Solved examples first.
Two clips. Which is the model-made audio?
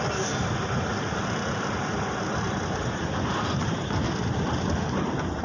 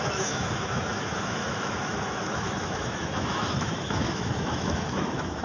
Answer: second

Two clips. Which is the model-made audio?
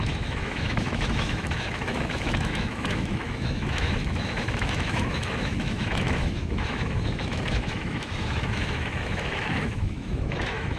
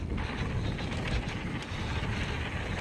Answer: first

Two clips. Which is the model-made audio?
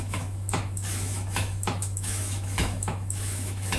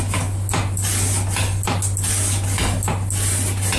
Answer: first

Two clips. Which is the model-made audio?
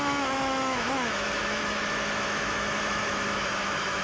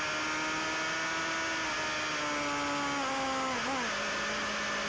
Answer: first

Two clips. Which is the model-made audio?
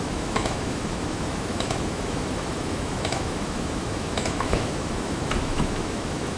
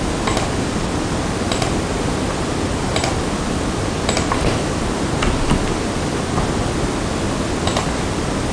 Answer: first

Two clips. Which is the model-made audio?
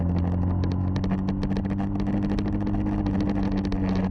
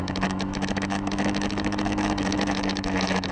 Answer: second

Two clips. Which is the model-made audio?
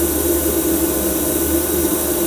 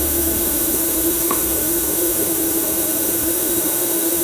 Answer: second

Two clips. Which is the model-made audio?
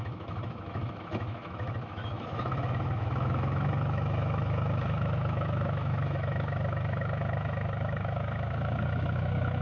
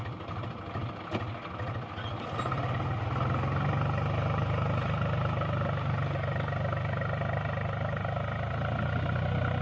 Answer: first